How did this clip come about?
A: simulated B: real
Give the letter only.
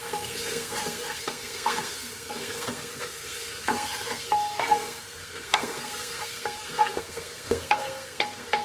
A